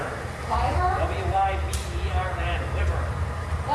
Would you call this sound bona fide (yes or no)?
no